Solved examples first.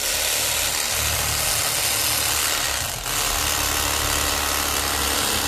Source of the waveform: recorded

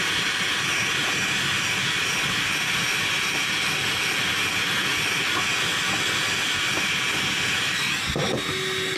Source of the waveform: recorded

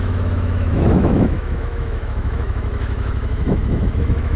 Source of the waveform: remade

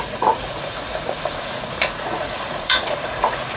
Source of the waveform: remade